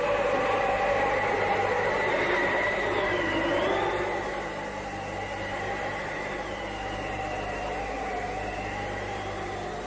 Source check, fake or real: real